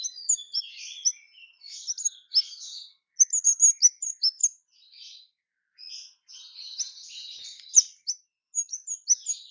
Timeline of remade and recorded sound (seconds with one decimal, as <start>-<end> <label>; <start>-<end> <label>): 0.0-9.5 recorded